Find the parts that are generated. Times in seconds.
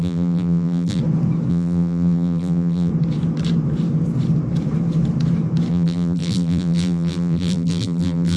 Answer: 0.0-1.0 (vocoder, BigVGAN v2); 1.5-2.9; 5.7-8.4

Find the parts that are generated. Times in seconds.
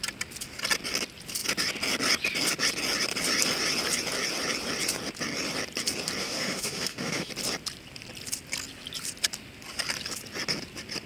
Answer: 6.2-7.3 (autoencoder, DAC-VAE)